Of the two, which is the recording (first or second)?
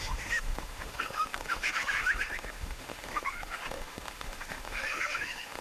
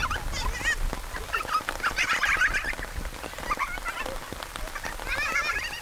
second